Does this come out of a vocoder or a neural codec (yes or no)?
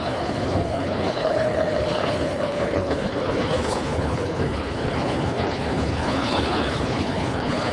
yes